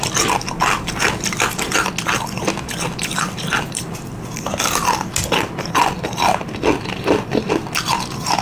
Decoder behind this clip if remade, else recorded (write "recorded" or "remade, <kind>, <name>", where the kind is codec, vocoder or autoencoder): recorded